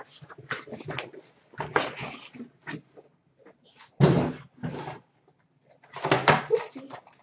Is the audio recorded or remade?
recorded